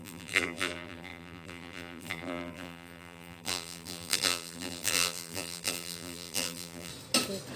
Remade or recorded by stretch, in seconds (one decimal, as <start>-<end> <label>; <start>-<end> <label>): 0.0-6.9 remade; 6.9-7.6 recorded

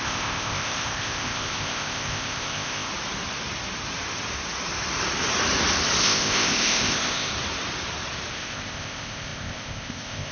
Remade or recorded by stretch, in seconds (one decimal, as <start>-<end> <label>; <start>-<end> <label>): 0.0-2.9 remade; 2.9-6.0 recorded; 6.0-7.3 remade; 7.3-8.3 recorded; 8.3-10.3 remade